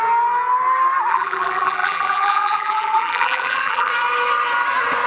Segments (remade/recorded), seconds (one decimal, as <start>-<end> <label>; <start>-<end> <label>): 0.0-1.1 recorded; 1.1-3.9 remade; 3.9-5.1 recorded